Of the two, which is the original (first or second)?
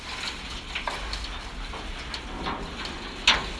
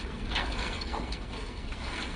first